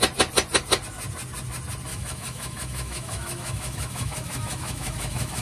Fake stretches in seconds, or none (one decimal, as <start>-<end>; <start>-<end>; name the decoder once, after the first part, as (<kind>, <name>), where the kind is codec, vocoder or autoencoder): 1.9-5.4 (autoencoder, DAC-VAE)